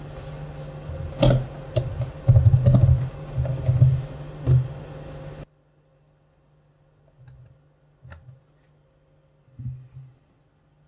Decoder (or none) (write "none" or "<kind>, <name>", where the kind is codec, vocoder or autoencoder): none